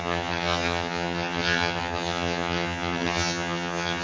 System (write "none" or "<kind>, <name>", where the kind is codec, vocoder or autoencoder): vocoder, HiFi-GAN